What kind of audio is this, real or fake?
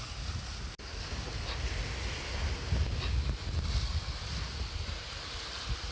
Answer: real